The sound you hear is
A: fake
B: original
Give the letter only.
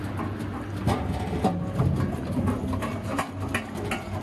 B